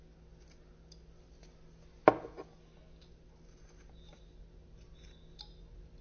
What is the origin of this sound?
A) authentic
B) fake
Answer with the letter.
A